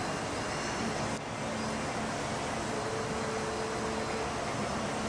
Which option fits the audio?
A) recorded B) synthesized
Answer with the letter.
A